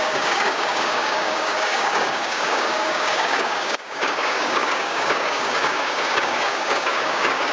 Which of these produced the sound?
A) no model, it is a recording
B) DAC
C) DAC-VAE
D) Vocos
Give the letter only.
B